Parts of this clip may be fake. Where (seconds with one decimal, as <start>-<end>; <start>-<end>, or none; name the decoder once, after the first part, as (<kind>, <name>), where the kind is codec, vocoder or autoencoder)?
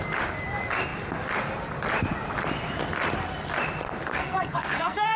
4.1-5.2 (codec, SNAC)